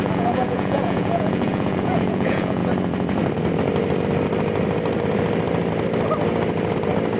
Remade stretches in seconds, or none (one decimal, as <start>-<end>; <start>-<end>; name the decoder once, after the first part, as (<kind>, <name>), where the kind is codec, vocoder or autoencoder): 0.0-2.6 (vocoder, Vocos)